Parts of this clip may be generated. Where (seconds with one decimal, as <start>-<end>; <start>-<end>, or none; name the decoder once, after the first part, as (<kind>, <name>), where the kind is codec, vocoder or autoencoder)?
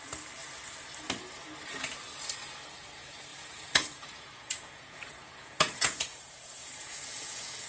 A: 3.3-7.7 (vocoder, Vocos)